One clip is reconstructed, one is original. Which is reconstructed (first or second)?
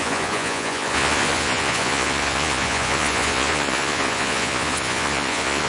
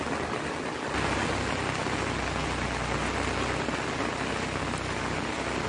first